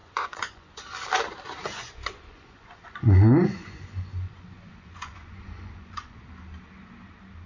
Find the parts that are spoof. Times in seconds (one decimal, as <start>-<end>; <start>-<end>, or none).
0.0-0.8; 1.7-6.2